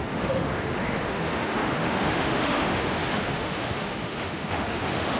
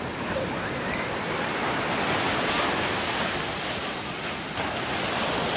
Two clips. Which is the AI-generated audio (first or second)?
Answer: first